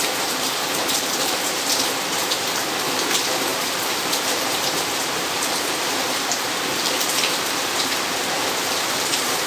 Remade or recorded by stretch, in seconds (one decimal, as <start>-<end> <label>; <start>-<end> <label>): 0.0-9.5 remade